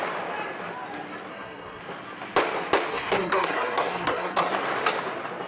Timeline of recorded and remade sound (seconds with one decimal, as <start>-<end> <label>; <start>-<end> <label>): 0.0-1.3 recorded; 1.3-1.8 remade; 1.8-2.9 recorded; 2.9-4.5 remade; 4.5-5.5 recorded